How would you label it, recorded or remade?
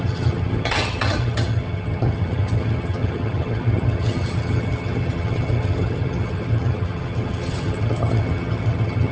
remade